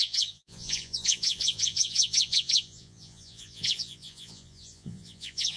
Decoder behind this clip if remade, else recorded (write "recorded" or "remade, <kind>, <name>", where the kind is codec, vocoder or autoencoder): remade, vocoder, Vocos